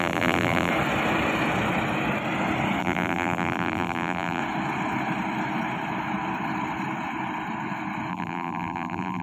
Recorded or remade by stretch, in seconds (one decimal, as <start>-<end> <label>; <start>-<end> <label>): 0.0-0.7 remade; 0.7-2.8 recorded; 2.8-4.4 remade; 4.4-8.1 recorded; 8.1-9.2 remade